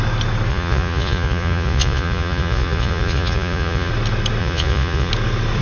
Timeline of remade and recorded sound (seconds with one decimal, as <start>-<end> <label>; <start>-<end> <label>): 0.0-0.5 recorded; 0.5-3.9 remade; 3.9-4.4 recorded; 4.4-5.1 remade; 5.1-5.6 recorded

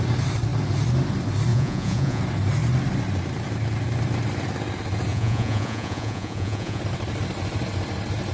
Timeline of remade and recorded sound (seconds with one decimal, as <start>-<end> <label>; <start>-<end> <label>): 0.0-1.5 recorded; 1.5-2.2 remade; 2.2-5.1 recorded; 5.1-6.8 remade; 6.8-8.3 recorded

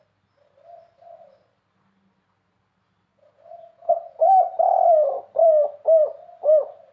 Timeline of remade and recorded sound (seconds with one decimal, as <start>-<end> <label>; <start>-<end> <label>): 0.0-3.1 recorded; 3.1-4.3 remade; 4.3-6.9 recorded

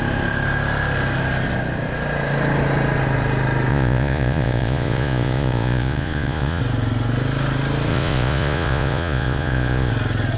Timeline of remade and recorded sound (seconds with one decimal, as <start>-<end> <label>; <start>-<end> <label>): 0.0-3.7 recorded; 3.7-6.6 remade; 6.6-7.9 recorded; 7.9-9.9 remade; 9.9-10.4 recorded